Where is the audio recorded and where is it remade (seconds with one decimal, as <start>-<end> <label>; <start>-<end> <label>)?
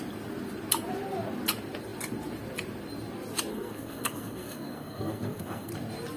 0.0-3.5 recorded; 3.5-5.7 remade; 5.7-6.2 recorded